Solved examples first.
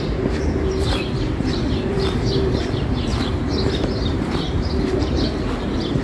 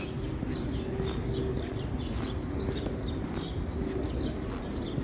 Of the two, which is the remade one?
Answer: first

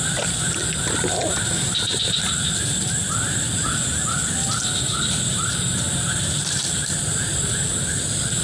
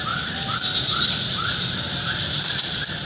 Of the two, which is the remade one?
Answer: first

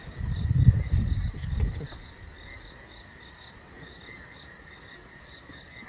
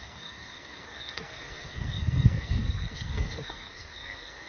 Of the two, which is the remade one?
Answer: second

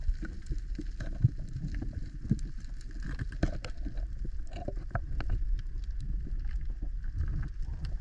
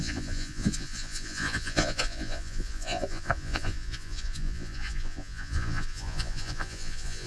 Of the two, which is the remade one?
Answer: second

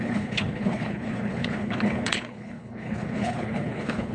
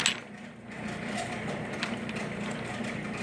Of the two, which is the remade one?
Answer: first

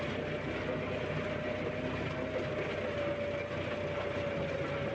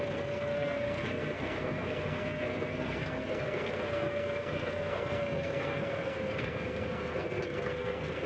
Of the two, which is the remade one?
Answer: second